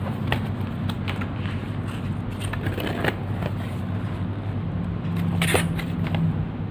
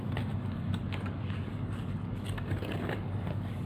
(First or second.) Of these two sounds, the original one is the first